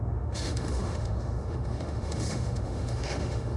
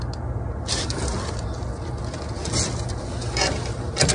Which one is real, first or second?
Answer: second